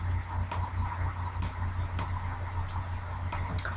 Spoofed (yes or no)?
no